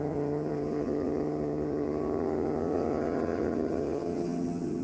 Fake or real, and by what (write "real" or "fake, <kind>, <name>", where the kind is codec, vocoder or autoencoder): fake, vocoder, HiFi-GAN